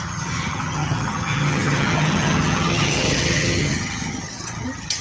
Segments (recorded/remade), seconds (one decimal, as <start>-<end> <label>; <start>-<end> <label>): 0.0-5.0 remade